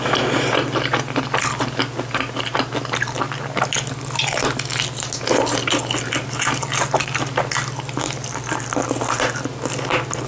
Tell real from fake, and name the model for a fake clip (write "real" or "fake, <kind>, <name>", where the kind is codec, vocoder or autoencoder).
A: real